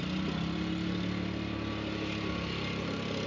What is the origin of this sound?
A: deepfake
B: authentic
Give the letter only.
B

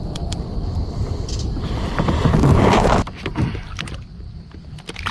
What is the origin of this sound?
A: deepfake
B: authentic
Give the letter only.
B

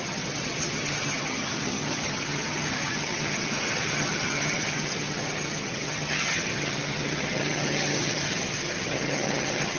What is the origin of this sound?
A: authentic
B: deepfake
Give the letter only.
B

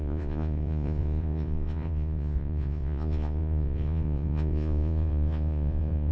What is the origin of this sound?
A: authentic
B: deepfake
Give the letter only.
B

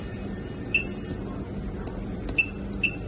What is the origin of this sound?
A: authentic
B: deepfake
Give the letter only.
A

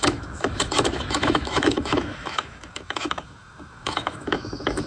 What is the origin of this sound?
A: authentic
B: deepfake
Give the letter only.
B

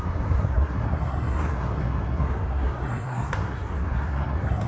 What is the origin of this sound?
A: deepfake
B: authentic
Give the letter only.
A